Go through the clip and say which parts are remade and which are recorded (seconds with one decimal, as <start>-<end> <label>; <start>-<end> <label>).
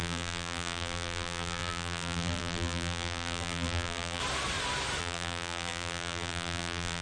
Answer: 0.0-4.2 remade; 4.2-5.0 recorded; 5.0-7.0 remade